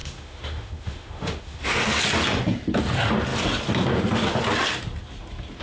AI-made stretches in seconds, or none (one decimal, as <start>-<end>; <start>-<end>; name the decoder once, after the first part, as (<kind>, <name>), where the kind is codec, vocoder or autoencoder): 0.0-2.0 (autoencoder, DAC-VAE)